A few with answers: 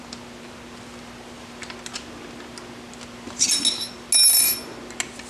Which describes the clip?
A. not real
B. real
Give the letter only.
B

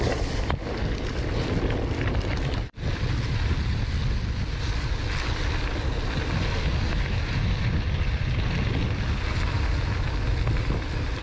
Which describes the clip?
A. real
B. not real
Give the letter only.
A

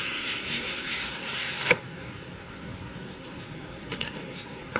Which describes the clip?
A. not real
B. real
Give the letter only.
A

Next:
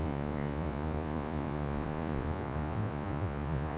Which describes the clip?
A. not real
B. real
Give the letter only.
A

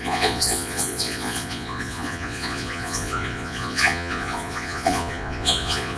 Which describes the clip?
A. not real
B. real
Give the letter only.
A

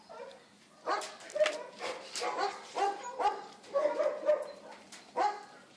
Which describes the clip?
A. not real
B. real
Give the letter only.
B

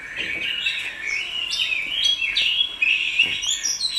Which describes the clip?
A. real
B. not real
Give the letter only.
A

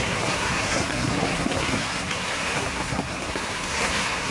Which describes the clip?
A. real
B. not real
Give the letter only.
B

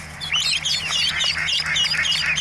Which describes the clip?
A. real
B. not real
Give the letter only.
A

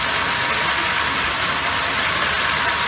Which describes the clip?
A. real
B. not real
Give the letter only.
A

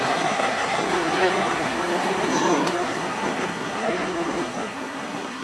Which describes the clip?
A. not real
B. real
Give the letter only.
A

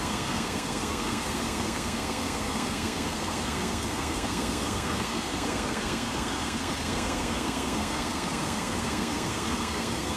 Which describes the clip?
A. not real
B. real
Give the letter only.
A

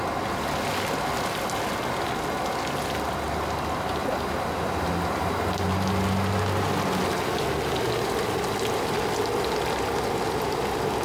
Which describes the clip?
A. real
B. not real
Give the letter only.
A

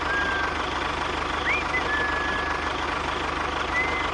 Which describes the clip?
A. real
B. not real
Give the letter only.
A